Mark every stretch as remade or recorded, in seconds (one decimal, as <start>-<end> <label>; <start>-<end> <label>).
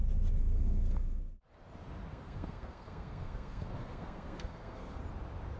0.0-0.4 recorded; 0.4-1.2 remade; 1.2-2.1 recorded; 2.1-5.0 remade; 5.0-5.6 recorded